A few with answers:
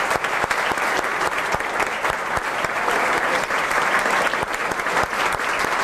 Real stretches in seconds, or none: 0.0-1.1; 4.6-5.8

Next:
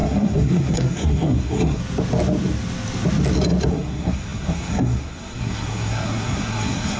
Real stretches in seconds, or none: 1.8-3.7

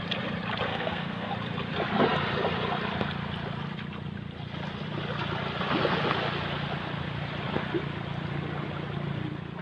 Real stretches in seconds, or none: 0.0-0.7; 1.3-9.6

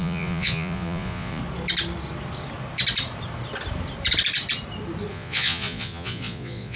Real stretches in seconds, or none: 1.4-5.1